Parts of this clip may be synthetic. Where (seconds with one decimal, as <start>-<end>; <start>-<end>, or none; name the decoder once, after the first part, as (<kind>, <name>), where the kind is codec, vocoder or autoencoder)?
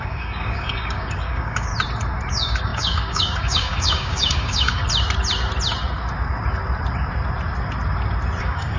0.0-1.7 (codec, DAC); 2.3-4.8; 8.4-8.8